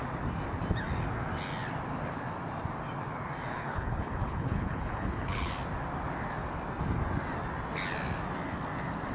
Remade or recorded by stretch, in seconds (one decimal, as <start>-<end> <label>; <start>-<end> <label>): 0.0-3.5 recorded; 3.5-5.5 remade; 5.5-9.1 recorded